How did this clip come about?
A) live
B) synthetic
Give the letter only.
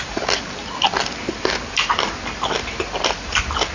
A